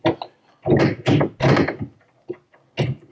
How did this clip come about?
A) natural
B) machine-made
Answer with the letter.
A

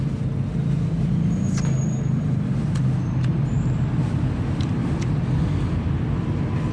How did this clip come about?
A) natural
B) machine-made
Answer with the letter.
B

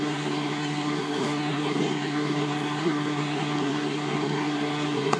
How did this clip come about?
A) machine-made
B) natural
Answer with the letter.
A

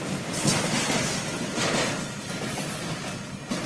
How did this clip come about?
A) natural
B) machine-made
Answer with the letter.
A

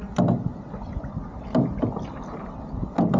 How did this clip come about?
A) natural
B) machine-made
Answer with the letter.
A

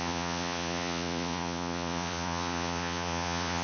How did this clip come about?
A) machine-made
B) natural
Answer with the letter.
A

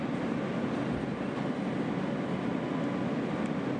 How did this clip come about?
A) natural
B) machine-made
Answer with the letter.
A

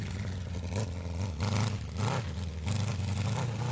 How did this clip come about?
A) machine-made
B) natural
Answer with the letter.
B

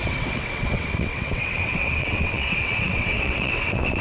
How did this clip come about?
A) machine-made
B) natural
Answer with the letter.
A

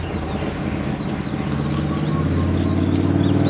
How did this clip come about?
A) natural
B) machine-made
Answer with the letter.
A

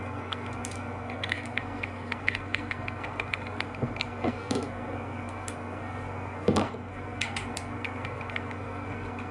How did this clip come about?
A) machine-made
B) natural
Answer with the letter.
A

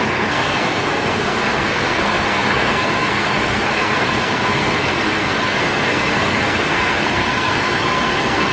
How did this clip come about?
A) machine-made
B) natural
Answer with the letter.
A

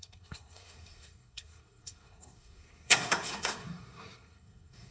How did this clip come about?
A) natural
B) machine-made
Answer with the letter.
B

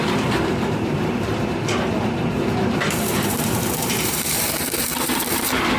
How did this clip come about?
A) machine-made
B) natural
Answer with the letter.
A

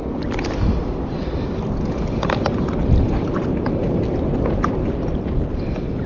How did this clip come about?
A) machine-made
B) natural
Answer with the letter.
B